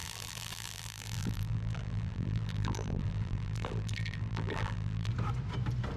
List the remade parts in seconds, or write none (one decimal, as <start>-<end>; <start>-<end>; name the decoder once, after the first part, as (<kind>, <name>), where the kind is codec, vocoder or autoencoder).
0.0-5.1 (vocoder, BigVGAN v2)